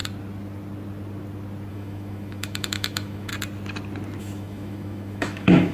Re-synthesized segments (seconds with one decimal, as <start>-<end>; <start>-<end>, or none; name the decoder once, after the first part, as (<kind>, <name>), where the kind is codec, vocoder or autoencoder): 1.7-3.3 (autoencoder, DAC-VAE); 4.2-5.7